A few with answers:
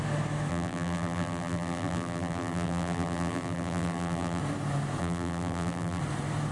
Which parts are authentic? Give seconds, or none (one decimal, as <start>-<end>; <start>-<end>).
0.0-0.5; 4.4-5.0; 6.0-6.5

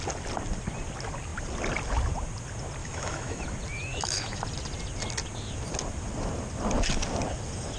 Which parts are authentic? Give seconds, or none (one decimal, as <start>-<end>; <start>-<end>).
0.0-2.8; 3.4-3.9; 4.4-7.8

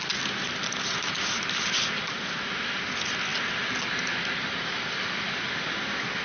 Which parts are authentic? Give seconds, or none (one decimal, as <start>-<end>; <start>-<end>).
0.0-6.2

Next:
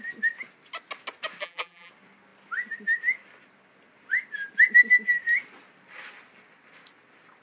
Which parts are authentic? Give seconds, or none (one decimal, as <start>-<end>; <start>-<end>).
0.0-1.4; 1.9-7.4